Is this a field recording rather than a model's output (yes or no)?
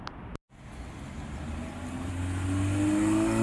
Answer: yes